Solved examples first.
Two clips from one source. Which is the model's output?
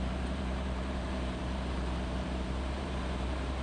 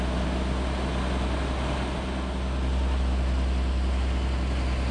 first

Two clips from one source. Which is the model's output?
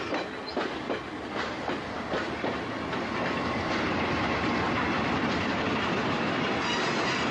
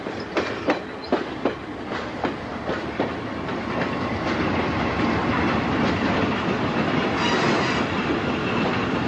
second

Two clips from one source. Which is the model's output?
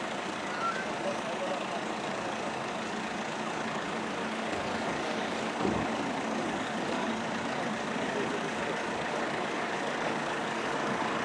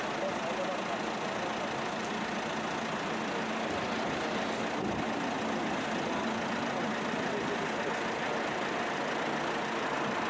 first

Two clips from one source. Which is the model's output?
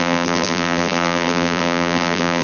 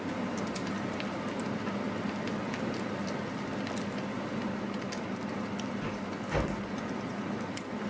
first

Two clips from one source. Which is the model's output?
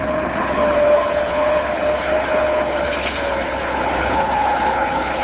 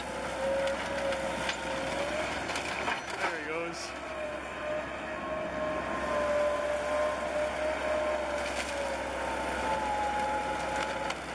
first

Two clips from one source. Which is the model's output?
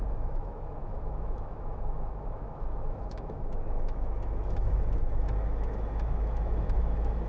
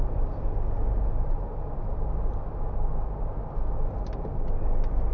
first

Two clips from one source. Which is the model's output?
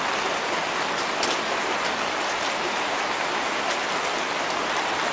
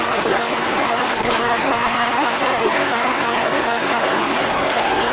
second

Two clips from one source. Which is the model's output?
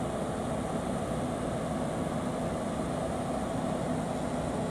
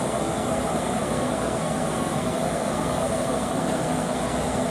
second